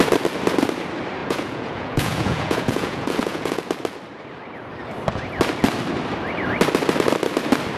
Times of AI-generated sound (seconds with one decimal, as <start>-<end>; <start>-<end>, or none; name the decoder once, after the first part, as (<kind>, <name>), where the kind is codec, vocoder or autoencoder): 1.2-3.6 (vocoder, Vocos)

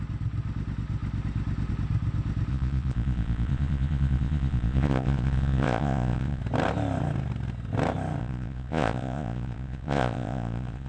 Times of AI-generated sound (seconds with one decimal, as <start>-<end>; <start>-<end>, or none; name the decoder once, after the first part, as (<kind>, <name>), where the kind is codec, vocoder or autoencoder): 2.5-6.4 (vocoder, Vocos); 8.2-10.9

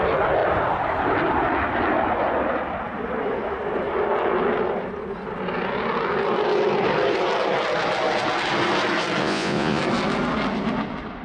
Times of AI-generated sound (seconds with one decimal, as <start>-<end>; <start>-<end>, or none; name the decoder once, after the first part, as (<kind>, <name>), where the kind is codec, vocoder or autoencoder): 9.2-9.8 (vocoder, Vocos)

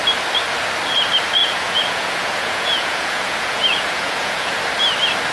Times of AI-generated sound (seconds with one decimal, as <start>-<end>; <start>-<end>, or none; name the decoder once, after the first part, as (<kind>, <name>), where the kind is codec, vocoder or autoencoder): 1.4-4.6 (vocoder, Vocos)

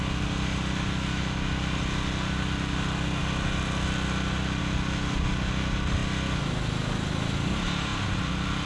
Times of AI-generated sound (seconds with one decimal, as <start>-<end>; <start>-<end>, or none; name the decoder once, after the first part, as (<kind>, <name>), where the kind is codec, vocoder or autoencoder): none